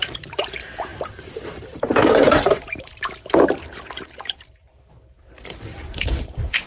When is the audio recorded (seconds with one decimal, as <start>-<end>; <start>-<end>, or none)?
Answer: none